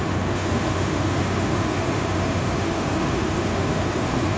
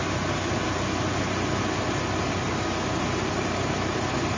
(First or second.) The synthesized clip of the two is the first